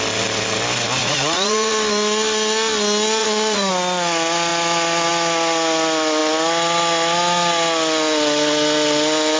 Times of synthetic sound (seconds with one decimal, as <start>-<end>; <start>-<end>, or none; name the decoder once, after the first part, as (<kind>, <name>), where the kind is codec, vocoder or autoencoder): 1.0-1.7 (vocoder, Vocos); 3.2-3.7